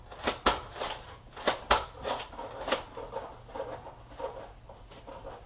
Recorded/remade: recorded